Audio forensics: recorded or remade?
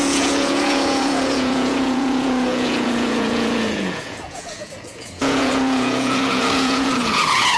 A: remade